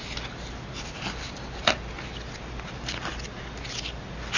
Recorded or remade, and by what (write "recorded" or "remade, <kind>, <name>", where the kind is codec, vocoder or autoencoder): recorded